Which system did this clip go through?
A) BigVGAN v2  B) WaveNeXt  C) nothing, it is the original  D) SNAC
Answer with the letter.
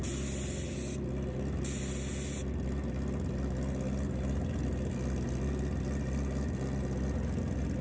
C